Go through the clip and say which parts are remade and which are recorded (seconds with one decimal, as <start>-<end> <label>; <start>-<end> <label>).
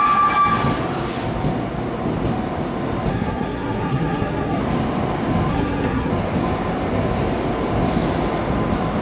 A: 0.0-3.1 recorded; 3.1-4.6 remade; 4.6-5.5 recorded; 5.5-6.1 remade; 6.1-9.0 recorded